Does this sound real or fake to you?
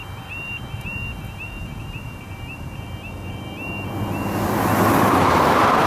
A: real